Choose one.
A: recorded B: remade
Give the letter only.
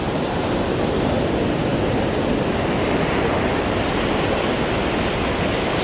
A